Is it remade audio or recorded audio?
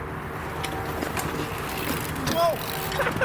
recorded